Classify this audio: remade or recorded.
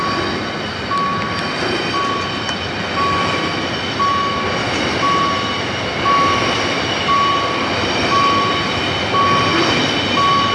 recorded